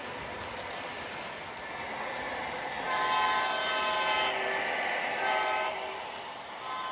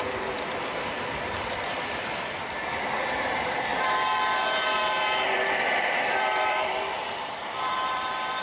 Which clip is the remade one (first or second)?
second